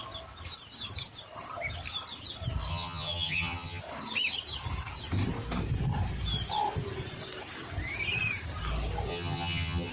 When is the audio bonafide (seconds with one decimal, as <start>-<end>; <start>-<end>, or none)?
0.0-2.7; 3.8-9.1